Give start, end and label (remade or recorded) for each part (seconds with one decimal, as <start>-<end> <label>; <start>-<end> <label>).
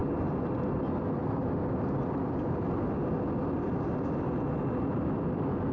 0.0-5.7 recorded